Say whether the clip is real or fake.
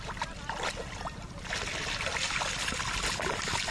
real